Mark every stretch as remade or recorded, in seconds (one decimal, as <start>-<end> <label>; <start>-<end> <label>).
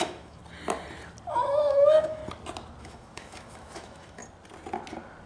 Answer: 0.0-0.4 remade; 0.4-1.3 recorded; 1.3-2.2 remade; 2.2-2.8 recorded; 2.8-4.2 remade; 4.2-5.3 recorded